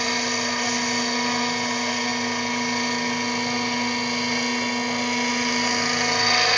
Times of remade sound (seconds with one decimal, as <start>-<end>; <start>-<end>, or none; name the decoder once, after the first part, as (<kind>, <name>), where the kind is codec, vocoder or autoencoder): none